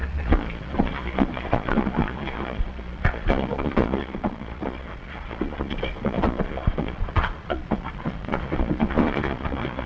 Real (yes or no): no